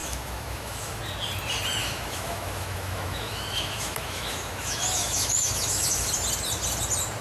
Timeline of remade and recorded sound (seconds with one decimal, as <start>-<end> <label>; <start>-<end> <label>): 0.0-1.0 remade; 1.0-1.8 recorded; 1.8-6.1 remade; 6.1-7.2 recorded